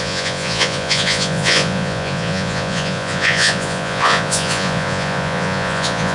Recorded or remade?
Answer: remade